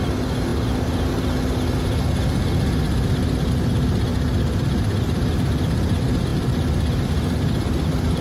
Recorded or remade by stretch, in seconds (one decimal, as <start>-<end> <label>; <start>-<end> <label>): 0.0-4.1 recorded; 4.1-5.3 remade; 5.3-6.3 recorded; 6.3-8.2 remade